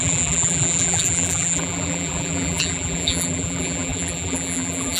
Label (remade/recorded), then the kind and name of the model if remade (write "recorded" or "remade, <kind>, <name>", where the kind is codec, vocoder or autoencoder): remade, vocoder, BigVGAN v2